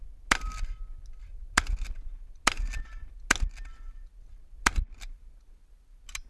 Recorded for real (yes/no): yes